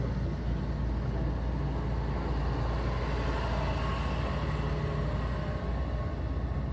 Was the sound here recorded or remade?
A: recorded